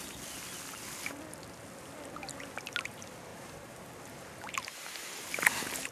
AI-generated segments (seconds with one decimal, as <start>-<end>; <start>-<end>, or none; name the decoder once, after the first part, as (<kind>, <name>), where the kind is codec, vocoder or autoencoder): 3.3-3.8 (vocoder, BigVGAN v2)